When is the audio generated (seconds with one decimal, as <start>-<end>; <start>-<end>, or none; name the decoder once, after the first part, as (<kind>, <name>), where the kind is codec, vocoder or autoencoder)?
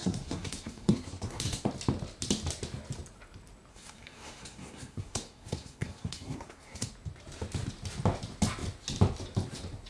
0.0-1.7 (codec, SNAC); 3.7-6.9